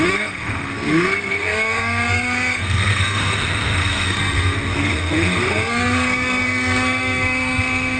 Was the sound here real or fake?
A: fake